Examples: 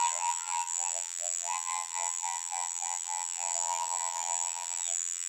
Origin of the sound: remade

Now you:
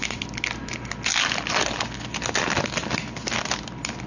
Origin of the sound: recorded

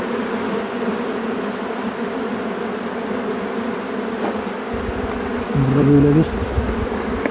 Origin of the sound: remade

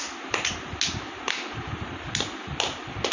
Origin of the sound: recorded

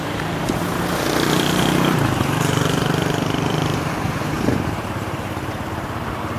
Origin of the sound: remade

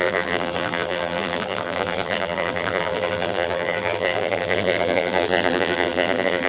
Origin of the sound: remade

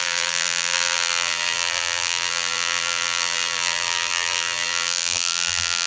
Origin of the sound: remade